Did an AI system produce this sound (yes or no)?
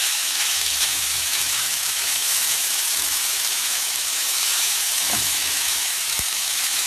yes